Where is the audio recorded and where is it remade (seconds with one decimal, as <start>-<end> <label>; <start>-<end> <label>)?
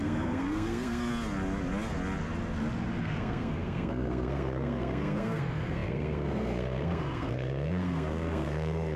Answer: 0.0-1.1 remade; 1.1-3.0 recorded; 3.0-9.0 remade